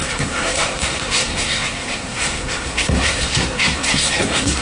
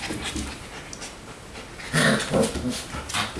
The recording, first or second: second